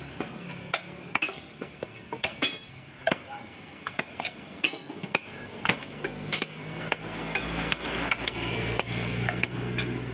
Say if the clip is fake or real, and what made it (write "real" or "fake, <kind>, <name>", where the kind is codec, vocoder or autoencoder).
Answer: fake, codec, SNAC